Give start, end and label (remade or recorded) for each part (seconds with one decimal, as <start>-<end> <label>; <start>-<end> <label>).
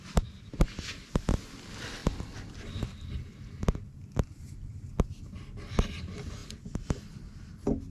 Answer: 0.0-7.9 recorded